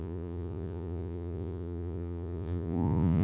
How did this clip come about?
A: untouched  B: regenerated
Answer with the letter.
B